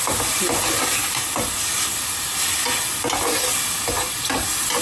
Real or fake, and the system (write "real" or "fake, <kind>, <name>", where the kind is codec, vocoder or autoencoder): real